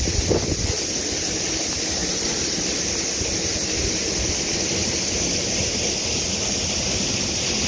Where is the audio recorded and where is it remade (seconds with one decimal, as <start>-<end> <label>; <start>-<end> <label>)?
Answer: 0.0-7.7 recorded